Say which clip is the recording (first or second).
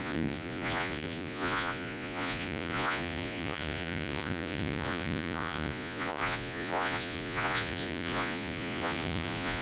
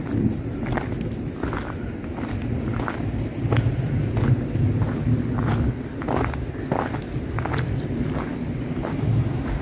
second